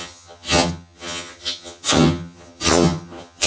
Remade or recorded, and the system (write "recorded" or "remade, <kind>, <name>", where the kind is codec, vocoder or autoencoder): remade, vocoder, HiFi-GAN